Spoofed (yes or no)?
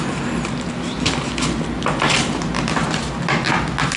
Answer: no